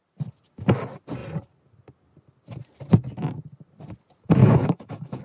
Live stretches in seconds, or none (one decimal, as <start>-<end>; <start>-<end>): 0.0-4.4